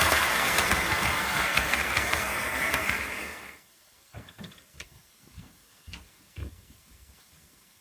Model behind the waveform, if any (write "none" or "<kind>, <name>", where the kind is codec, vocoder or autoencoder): codec, SNAC